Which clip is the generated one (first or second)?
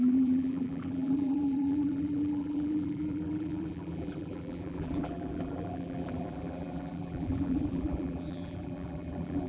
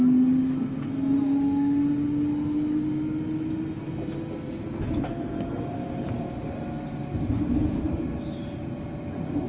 first